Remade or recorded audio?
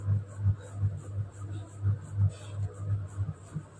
recorded